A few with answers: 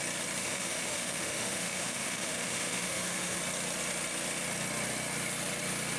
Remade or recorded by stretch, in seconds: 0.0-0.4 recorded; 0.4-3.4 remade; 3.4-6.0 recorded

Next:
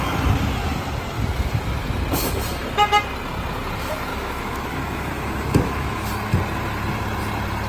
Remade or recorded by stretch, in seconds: 0.0-4.1 recorded; 4.1-6.1 remade; 6.1-7.7 recorded